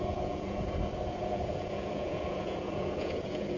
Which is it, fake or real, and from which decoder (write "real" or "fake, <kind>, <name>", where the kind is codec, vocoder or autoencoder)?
fake, vocoder, Vocos